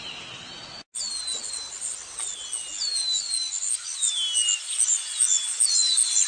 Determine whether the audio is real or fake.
real